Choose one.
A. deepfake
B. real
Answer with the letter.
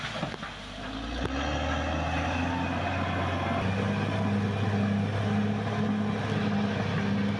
B